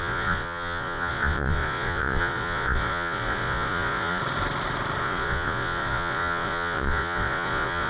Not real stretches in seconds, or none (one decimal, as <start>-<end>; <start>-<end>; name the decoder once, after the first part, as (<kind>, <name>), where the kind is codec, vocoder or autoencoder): 0.0-4.2 (vocoder, Vocos); 5.0-7.9